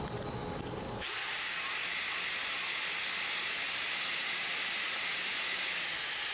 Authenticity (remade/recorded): recorded